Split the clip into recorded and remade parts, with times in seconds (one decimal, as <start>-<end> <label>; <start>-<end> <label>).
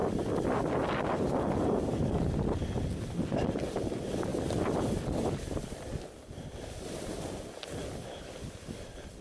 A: 0.0-1.6 recorded; 1.6-2.4 remade; 2.4-9.2 recorded